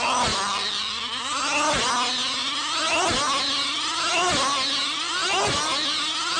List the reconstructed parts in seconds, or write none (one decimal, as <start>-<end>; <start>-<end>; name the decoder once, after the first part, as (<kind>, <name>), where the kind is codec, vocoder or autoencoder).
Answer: none